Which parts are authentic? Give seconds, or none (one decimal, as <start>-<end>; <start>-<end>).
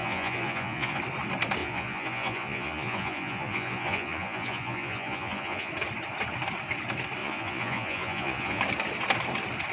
1.0-1.6; 5.7-7.2; 8.6-9.7